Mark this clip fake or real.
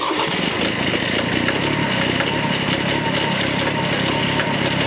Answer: real